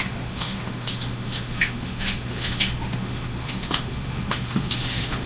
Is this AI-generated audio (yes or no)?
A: yes